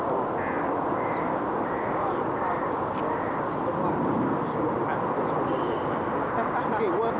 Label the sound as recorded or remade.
recorded